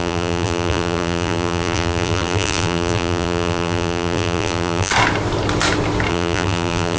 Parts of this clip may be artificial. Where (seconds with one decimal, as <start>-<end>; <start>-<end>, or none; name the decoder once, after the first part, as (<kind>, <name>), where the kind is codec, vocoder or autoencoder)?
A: 0.0-4.9 (vocoder, BigVGAN v2); 6.1-7.0